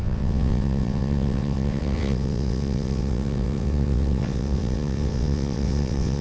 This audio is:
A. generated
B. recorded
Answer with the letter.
A